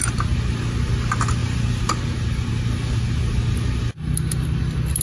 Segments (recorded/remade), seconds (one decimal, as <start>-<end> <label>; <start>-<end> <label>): 0.0-5.0 recorded

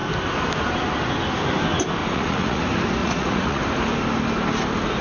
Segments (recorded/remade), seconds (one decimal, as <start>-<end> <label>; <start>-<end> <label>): 0.0-2.0 recorded; 2.0-2.6 remade; 2.6-3.0 recorded; 3.0-3.6 remade; 3.6-5.0 recorded

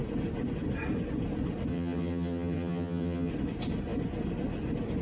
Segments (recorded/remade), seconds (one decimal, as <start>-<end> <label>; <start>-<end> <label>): 0.0-1.7 recorded; 1.7-3.3 remade; 3.3-5.0 recorded

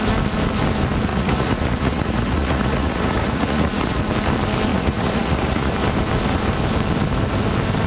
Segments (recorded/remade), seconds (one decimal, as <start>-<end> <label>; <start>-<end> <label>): 0.0-1.1 recorded; 1.1-4.0 remade; 4.0-4.7 recorded; 4.7-5.7 remade; 5.7-7.9 recorded

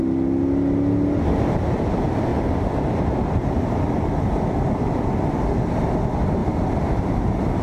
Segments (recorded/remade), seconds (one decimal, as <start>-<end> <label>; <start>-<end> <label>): 0.0-7.6 recorded

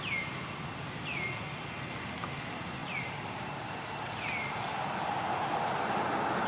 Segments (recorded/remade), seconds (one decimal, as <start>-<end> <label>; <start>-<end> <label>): 0.0-6.5 recorded